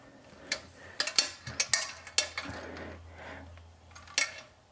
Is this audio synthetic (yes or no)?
no